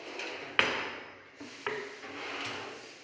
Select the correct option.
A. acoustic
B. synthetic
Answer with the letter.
A